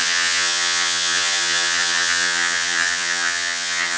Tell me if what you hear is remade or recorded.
remade